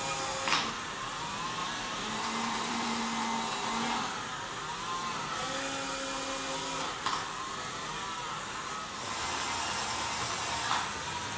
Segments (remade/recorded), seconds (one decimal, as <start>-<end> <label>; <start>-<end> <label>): 0.0-1.6 recorded; 1.6-3.0 remade; 3.0-11.4 recorded